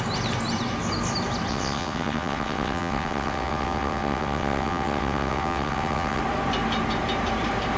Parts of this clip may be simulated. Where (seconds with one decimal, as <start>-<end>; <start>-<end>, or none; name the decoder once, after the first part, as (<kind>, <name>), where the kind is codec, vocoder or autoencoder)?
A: 1.5-6.2 (vocoder, WaveNeXt)